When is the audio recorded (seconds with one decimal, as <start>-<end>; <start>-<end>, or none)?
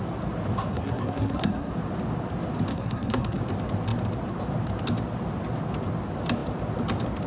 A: 0.0-0.7; 1.7-2.7; 3.4-7.3